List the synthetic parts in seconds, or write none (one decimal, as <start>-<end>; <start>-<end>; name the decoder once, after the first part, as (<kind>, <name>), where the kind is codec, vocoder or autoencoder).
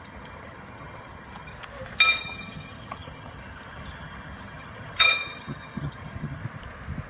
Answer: 0.0-1.5 (vocoder, HiFi-GAN); 2.2-6.4